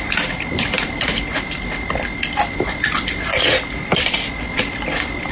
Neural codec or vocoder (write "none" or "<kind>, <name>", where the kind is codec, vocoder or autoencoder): none